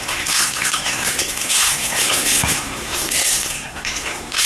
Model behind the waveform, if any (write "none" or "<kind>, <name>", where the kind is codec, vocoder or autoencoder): codec, SNAC